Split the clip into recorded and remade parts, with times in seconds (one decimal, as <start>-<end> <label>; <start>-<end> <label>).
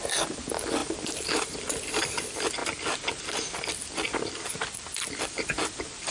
0.0-2.6 remade; 2.6-4.3 recorded; 4.3-6.1 remade